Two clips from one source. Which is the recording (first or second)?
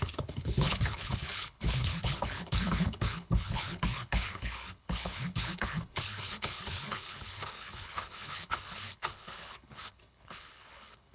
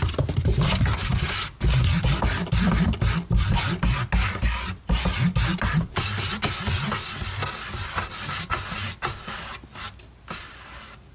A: second